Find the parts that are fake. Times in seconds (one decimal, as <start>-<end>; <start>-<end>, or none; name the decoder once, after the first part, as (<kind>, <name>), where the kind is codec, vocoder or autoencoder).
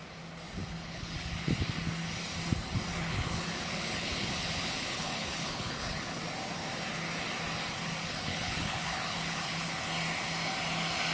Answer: 0.6-1.5 (codec, HILCodec); 2.9-6.2; 8.0-9.8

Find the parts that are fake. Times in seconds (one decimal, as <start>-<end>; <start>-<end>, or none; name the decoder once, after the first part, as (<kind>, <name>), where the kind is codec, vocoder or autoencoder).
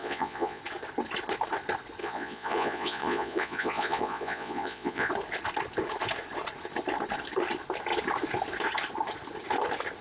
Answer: 0.0-0.6 (vocoder, Vocos); 2.0-5.1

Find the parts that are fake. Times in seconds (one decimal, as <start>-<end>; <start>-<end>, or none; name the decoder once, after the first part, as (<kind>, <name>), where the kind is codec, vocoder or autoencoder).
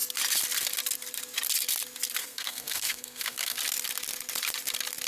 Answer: 2.2-3.6 (codec, SNAC)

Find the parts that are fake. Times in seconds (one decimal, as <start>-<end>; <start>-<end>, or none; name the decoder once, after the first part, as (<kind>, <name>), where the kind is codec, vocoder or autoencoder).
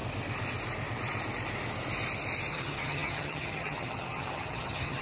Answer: 2.5-5.0 (vocoder, HiFi-GAN)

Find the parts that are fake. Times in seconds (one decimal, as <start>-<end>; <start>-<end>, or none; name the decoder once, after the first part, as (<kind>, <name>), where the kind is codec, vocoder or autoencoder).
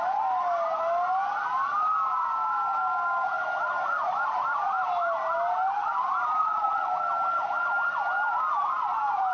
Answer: 6.4-6.9 (vocoder, Vocos)